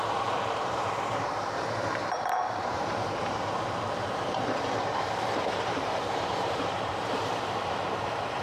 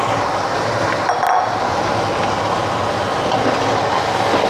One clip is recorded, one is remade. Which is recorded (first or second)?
second